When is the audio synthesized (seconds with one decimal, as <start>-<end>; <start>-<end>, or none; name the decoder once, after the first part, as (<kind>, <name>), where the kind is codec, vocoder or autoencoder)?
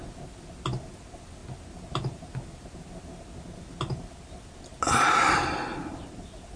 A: none